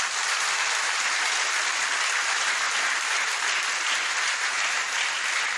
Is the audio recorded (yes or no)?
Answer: yes